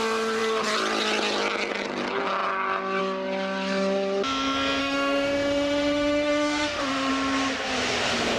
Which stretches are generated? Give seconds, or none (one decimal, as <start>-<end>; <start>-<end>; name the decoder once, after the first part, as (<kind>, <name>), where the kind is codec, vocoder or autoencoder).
4.8-7.1 (autoencoder, DAC-VAE)